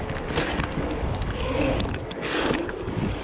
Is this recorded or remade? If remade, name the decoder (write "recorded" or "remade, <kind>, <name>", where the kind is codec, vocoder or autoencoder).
remade, codec, DAC